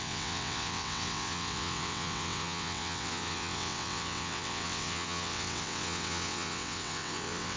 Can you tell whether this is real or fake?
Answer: fake